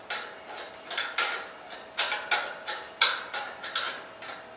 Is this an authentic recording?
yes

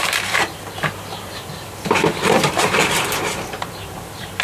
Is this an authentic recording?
no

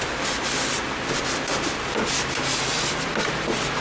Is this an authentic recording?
yes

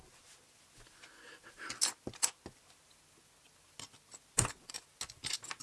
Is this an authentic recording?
yes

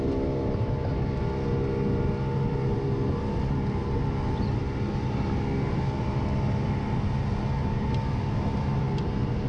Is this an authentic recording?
yes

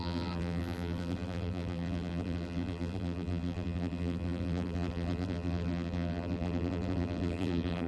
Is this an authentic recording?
no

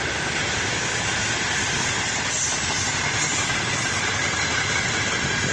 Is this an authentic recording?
yes